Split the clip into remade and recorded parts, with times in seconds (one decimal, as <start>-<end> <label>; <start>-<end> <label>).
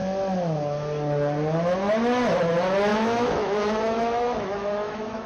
0.0-2.9 recorded; 2.9-5.3 remade